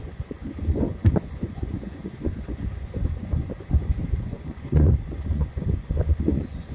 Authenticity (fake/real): fake